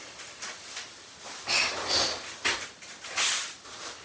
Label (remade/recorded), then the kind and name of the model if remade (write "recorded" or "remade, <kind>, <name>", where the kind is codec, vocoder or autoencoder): recorded